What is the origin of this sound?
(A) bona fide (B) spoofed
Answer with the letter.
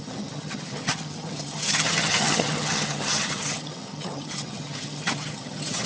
B